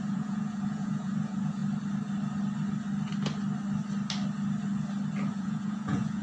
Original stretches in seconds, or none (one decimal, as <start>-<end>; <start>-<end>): 1.6-5.3